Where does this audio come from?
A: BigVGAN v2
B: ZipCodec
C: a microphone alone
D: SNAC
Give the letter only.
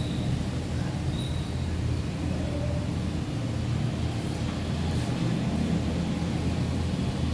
C